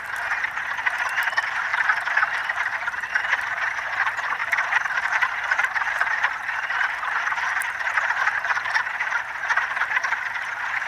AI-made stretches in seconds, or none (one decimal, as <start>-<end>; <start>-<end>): 1.7-2.4; 4.4-7.1